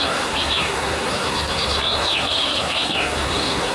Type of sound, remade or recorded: remade